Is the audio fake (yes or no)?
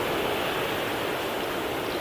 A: no